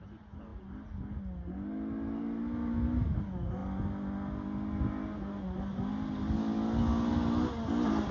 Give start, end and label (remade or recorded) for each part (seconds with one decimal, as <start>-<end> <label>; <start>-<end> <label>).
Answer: 0.0-8.1 recorded